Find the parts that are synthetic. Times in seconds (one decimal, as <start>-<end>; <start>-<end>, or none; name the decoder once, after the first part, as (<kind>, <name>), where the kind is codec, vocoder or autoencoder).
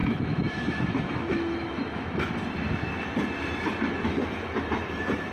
0.0-2.3 (autoencoder, DAC-VAE); 4.1-5.3